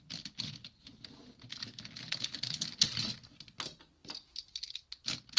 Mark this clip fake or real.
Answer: real